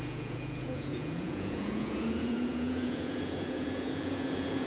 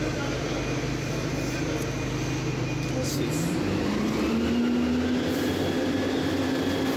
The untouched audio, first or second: second